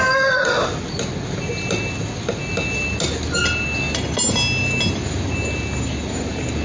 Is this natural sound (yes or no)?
yes